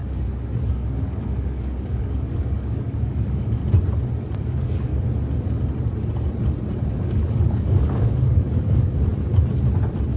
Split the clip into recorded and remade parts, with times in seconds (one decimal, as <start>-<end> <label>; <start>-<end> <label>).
0.0-3.6 remade; 3.6-4.4 recorded; 4.4-4.9 remade; 4.9-6.9 recorded; 6.9-9.1 remade; 9.1-10.2 recorded